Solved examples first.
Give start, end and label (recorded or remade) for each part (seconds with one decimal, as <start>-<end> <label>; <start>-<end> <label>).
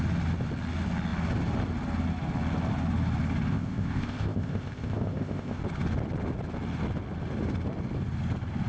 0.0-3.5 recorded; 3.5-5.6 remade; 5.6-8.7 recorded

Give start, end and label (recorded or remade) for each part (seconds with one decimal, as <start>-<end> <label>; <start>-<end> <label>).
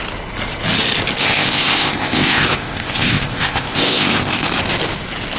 0.0-1.2 recorded; 1.2-4.4 remade; 4.4-5.4 recorded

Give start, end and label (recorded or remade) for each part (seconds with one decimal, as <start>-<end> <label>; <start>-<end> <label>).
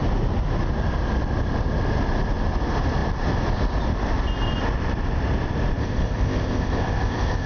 0.0-5.8 recorded; 5.8-7.5 remade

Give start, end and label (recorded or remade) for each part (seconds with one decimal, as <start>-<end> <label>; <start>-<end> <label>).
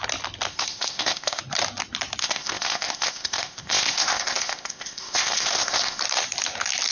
0.0-0.5 recorded; 0.5-1.4 remade; 1.4-2.2 recorded; 2.2-6.0 remade; 6.0-6.9 recorded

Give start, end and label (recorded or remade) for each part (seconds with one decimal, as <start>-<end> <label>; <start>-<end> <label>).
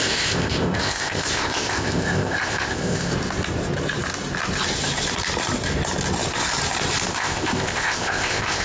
0.0-3.1 remade; 3.1-7.1 recorded; 7.1-8.6 remade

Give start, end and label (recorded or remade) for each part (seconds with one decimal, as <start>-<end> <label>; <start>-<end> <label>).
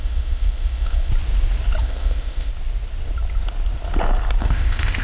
0.0-1.1 remade; 1.1-1.8 recorded; 1.8-2.5 remade; 2.5-4.4 recorded; 4.4-5.0 remade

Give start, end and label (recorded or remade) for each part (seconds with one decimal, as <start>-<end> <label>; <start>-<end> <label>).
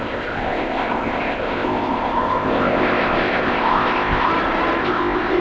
0.0-4.3 remade; 4.3-4.8 recorded; 4.8-5.4 remade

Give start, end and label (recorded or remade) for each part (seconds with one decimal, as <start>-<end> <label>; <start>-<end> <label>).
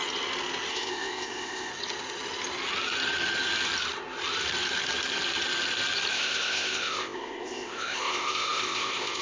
0.0-0.7 recorded; 0.7-1.7 remade; 1.7-6.1 recorded; 6.1-9.2 remade